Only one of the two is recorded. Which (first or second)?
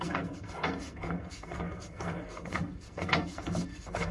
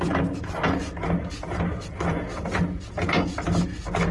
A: second